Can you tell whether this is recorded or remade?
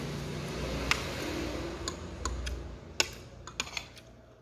recorded